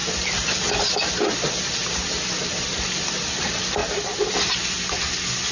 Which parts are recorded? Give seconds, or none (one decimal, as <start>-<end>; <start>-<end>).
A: 0.0-5.5